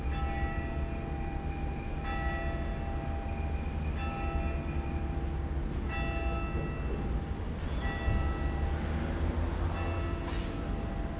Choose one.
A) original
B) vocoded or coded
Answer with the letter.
A